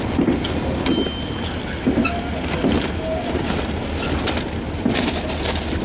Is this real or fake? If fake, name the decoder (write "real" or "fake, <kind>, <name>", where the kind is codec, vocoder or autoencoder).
real